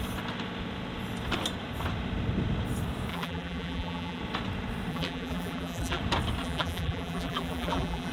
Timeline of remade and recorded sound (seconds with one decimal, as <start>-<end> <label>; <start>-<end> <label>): 0.0-3.1 recorded; 3.1-4.2 remade; 4.2-4.9 recorded; 4.9-6.0 remade; 6.0-6.4 recorded; 6.4-8.1 remade